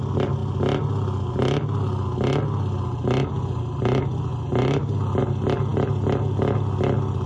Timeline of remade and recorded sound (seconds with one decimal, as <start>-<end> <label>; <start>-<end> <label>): 0.0-7.3 recorded